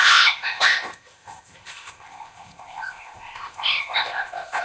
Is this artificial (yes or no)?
yes